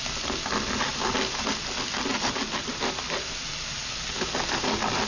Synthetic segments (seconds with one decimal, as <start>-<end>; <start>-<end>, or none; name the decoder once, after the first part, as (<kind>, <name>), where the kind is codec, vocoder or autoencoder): none